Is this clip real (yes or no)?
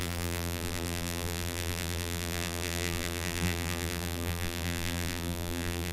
no